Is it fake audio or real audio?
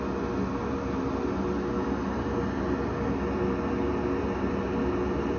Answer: real